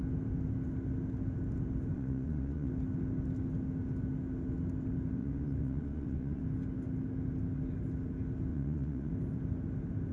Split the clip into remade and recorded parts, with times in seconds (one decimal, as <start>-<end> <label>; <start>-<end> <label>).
0.0-1.9 recorded; 1.9-2.7 remade; 2.7-5.2 recorded; 5.2-6.4 remade; 6.4-8.5 recorded; 8.5-9.1 remade; 9.1-10.1 recorded